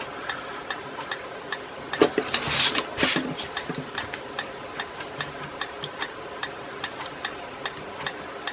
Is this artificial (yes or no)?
no